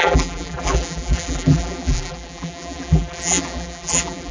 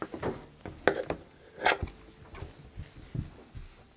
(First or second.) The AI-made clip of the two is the first